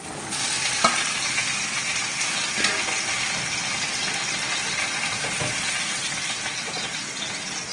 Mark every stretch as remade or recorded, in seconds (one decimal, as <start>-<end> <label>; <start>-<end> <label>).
0.0-7.7 recorded